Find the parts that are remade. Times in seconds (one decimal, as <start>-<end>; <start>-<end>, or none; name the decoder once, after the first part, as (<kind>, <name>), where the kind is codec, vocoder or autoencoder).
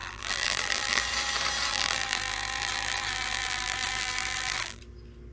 0.0-1.0 (vocoder, BigVGAN v2); 1.7-4.8